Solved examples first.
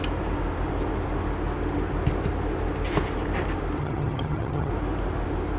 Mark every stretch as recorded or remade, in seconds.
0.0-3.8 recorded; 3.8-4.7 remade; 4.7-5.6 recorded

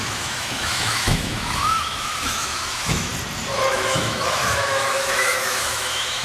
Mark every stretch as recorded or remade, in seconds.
0.0-3.1 remade; 3.1-3.7 recorded; 3.7-6.2 remade

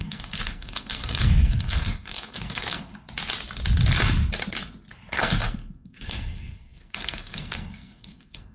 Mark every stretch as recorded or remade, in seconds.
0.0-2.9 remade; 2.9-5.1 recorded; 5.1-8.5 remade

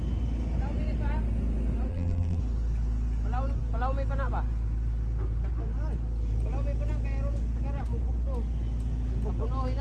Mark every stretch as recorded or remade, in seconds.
0.0-1.9 recorded; 1.9-2.4 remade; 2.4-9.8 recorded

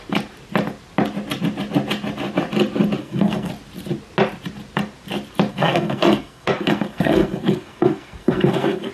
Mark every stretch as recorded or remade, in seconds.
0.0-3.0 recorded; 3.0-3.5 remade; 3.5-5.5 recorded; 5.5-8.9 remade

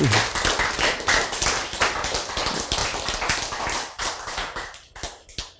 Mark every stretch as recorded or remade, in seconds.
0.0-5.6 recorded

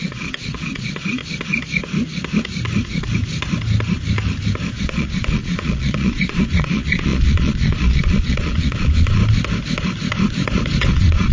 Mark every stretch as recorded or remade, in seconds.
0.0-1.2 remade; 1.2-4.7 recorded; 4.7-9.2 remade; 9.2-10.9 recorded; 10.9-11.3 remade